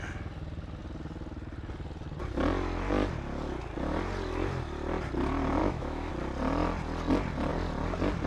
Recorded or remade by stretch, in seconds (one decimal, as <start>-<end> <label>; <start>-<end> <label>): 0.0-5.6 recorded; 5.6-6.1 remade; 6.1-8.3 recorded